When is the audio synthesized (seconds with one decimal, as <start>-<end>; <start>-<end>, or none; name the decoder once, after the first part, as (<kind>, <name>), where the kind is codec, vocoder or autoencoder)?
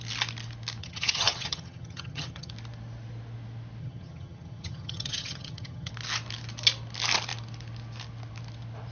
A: 0.8-2.5 (vocoder, HiFi-GAN); 3.8-5.9